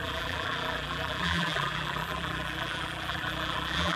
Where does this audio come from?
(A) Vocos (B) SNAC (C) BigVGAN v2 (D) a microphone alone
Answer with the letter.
C